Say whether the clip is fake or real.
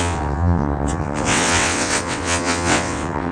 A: fake